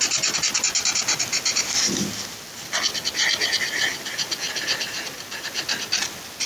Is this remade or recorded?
recorded